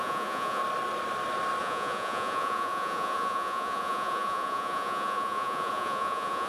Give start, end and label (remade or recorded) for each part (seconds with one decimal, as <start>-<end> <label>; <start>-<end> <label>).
0.0-0.6 remade; 0.6-1.6 recorded; 1.6-6.5 remade